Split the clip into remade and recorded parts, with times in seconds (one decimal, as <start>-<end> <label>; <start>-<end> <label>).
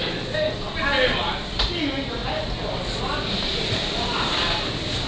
0.0-5.1 recorded